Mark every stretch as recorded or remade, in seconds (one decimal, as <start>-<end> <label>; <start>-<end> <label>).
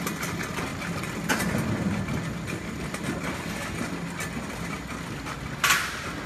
0.0-6.3 recorded